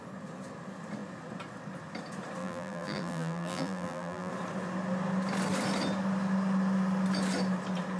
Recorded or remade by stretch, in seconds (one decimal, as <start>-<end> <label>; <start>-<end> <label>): 0.0-2.4 recorded; 2.4-4.3 remade; 4.3-8.0 recorded